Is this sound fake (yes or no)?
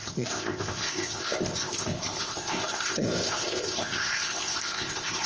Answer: yes